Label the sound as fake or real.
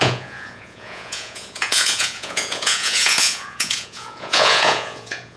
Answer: fake